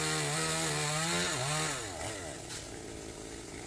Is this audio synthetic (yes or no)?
no